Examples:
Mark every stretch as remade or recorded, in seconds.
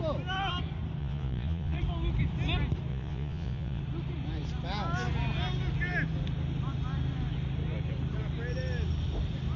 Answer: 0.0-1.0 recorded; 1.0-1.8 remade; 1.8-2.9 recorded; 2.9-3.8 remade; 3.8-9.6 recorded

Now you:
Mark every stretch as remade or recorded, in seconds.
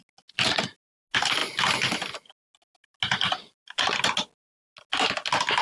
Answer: 0.0-5.6 recorded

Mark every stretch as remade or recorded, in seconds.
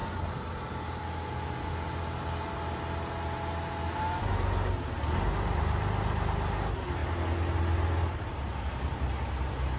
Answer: 0.0-9.8 recorded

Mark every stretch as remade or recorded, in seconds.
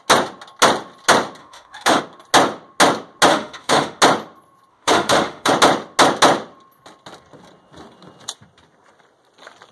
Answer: 0.0-1.4 recorded; 1.4-2.0 remade; 2.0-3.3 recorded; 3.3-4.0 remade; 4.0-4.7 recorded; 4.7-5.5 remade; 5.5-9.7 recorded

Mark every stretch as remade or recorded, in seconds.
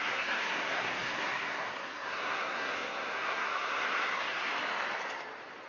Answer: 0.0-4.5 remade; 4.5-5.7 recorded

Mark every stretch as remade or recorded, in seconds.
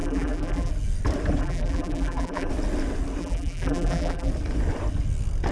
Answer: 0.0-0.7 remade; 0.7-1.4 recorded; 1.4-2.5 remade; 2.5-3.2 recorded; 3.2-4.3 remade; 4.3-5.5 recorded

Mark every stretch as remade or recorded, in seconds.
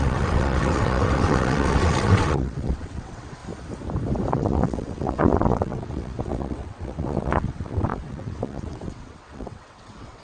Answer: 0.0-3.4 remade; 3.4-4.3 recorded; 4.3-10.2 remade